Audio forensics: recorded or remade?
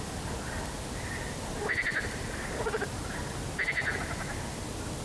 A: recorded